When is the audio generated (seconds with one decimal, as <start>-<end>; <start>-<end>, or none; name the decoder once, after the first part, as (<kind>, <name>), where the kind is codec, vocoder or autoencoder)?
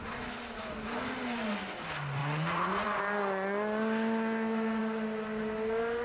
2.2-3.0 (vocoder, Vocos)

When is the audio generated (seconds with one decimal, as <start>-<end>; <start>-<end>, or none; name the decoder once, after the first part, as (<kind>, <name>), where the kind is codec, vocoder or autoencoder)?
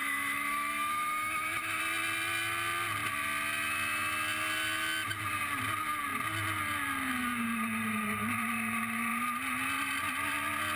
0.0-1.8 (autoencoder, DAC-VAE)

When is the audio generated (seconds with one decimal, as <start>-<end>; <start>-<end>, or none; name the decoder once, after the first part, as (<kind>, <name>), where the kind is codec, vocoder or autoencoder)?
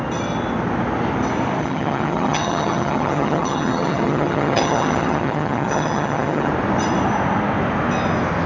1.6-6.5 (vocoder, HiFi-GAN)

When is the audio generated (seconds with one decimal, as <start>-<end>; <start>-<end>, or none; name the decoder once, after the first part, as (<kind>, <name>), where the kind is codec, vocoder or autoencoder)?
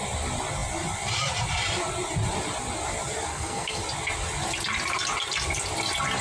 3.3-3.8 (codec, SNAC)